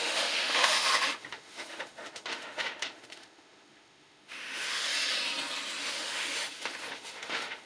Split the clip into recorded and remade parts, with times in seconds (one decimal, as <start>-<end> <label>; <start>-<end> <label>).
0.0-4.9 remade; 4.9-5.8 recorded; 5.8-7.7 remade